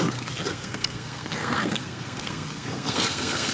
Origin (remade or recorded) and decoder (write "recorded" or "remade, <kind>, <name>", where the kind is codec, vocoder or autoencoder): remade, codec, SNAC